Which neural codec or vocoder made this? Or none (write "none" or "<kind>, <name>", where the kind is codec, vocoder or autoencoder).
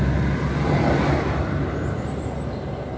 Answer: none